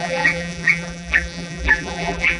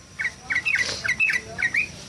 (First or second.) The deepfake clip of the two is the first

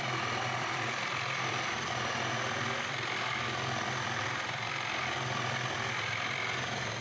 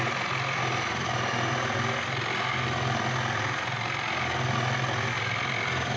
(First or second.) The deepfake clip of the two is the first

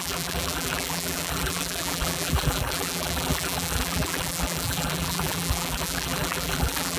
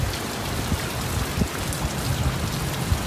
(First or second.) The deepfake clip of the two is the first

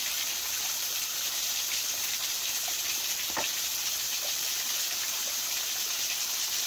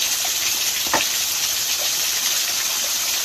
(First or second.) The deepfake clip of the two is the first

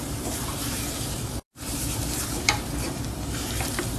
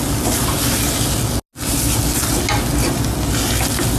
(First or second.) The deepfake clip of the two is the first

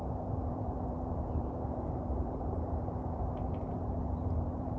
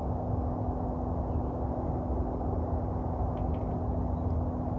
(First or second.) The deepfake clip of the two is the first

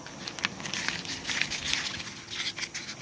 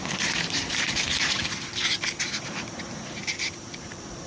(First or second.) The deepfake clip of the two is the second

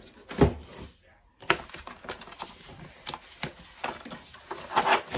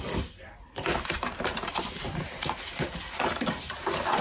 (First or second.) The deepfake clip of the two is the second